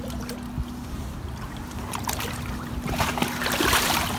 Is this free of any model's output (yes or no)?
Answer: yes